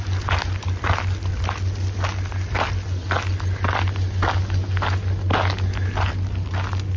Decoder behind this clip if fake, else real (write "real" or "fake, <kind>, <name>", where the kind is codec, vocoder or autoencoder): real